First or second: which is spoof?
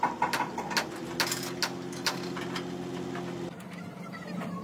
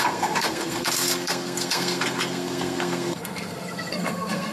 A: second